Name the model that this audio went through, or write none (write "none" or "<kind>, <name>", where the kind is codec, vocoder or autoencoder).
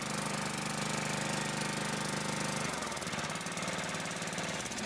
none